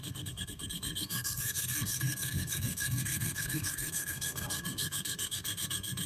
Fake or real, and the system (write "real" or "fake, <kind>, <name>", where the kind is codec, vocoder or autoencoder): fake, codec, SNAC